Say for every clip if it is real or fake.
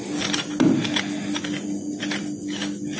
real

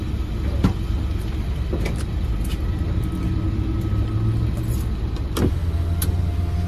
real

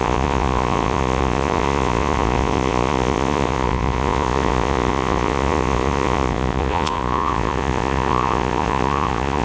fake